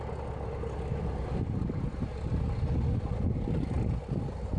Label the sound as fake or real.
real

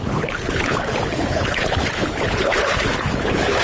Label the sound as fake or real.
fake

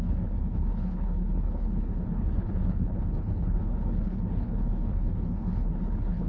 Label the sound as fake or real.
fake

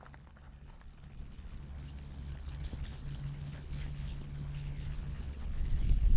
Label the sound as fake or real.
fake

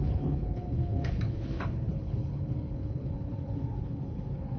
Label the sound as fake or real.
fake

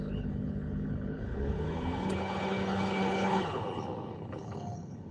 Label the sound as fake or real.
fake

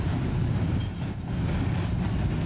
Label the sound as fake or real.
real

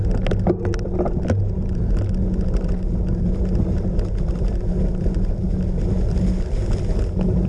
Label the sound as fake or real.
real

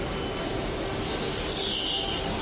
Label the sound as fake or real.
real